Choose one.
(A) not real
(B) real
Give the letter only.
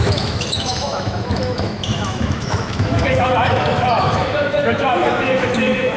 A